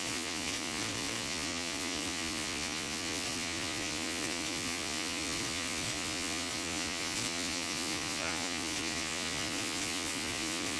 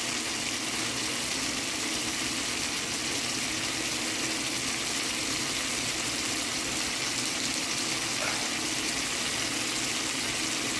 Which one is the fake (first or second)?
first